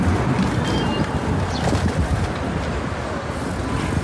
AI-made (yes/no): no